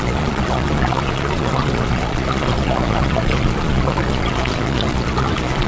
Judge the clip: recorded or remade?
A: remade